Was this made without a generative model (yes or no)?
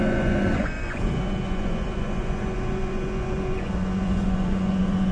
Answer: no